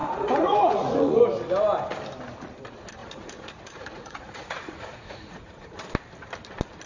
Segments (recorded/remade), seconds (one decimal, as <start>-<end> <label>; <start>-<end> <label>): 0.0-1.2 remade; 1.2-3.0 recorded; 3.0-5.8 remade; 5.8-6.9 recorded